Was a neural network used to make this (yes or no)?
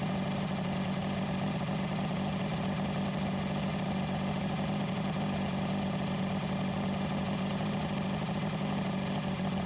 no